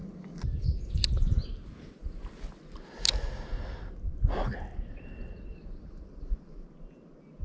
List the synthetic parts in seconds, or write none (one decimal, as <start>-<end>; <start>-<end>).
none

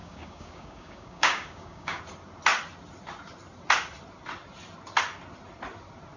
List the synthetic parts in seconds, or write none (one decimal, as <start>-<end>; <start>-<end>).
0.0-2.0

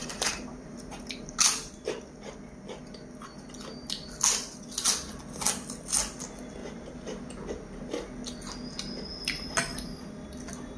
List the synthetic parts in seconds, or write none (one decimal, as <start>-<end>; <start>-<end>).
0.0-1.9; 6.6-7.2

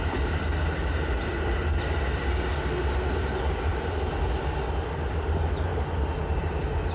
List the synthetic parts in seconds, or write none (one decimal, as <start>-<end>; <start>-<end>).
none

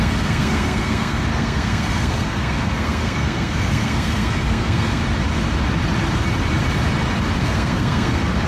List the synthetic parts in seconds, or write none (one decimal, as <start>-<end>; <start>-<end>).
0.0-5.0; 7.4-8.5